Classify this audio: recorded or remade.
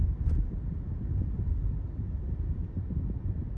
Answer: recorded